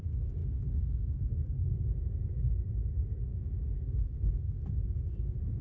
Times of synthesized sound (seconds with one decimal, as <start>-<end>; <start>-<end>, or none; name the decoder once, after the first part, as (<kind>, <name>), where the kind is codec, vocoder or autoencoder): 0.4-2.3 (codec, DAC); 3.3-4.3